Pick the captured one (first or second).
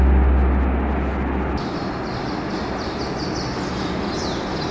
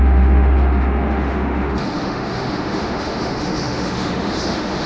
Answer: first